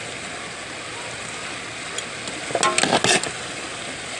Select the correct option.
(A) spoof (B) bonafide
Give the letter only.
B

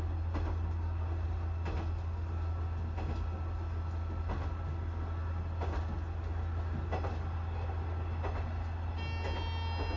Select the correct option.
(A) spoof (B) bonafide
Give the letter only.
B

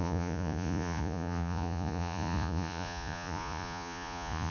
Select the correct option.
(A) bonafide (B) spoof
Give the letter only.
B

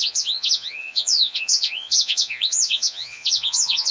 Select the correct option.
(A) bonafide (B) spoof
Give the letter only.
B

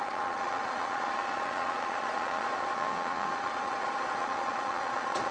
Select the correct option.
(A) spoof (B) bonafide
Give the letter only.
A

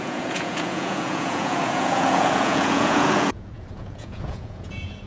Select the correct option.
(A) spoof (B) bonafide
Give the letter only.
A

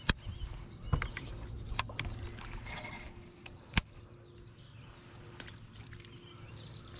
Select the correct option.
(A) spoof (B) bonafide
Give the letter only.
B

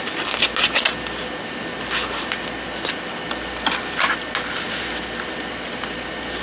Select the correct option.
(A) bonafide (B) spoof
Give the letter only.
A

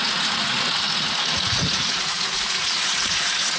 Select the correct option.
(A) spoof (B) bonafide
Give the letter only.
A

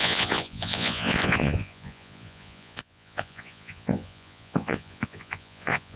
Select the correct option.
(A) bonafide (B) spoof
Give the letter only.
B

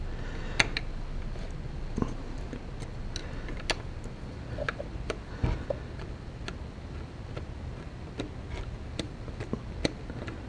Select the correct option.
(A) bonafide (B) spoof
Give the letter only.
A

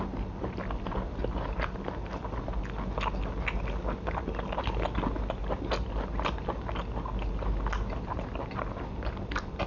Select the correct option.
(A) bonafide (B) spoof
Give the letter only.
A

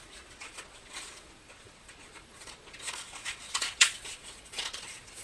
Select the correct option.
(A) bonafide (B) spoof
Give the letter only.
B